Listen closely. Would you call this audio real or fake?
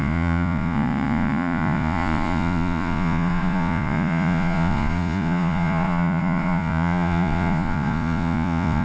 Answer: fake